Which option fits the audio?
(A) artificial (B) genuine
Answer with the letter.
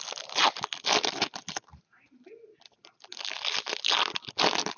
B